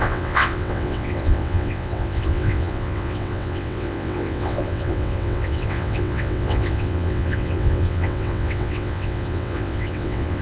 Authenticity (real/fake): fake